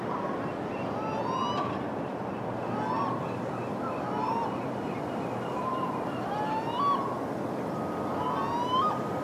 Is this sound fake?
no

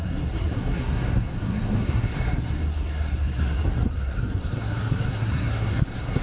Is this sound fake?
yes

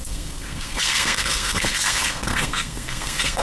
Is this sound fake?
yes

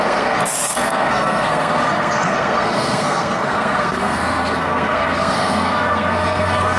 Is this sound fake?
yes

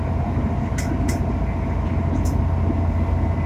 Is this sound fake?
no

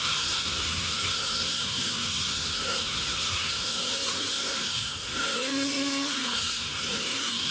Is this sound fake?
yes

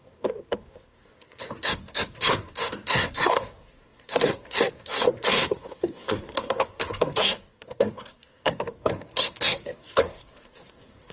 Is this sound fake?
yes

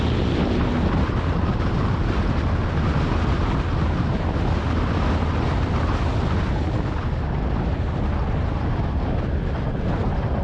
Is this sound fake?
no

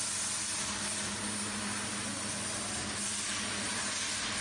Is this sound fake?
no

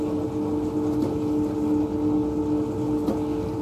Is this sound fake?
no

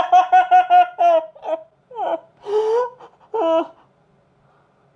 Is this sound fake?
no